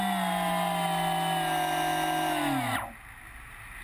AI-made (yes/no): no